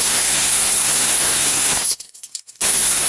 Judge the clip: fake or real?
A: fake